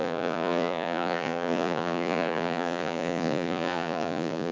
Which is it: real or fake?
fake